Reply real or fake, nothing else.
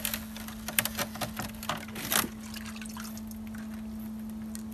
real